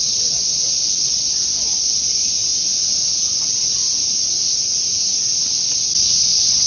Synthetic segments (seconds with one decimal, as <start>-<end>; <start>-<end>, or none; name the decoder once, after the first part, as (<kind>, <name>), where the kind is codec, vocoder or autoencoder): 0.0-2.5 (vocoder, WaveNeXt); 3.1-3.8; 6.2-6.7